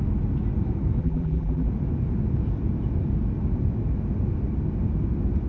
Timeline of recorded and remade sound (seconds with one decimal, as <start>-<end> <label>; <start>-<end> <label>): 0.0-1.0 recorded; 1.0-1.7 remade; 1.7-5.5 recorded